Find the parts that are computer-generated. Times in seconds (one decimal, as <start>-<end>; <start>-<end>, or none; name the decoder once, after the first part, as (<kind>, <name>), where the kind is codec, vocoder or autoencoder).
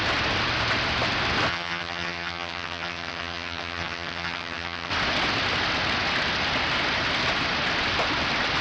1.5-4.9 (vocoder, HiFi-GAN)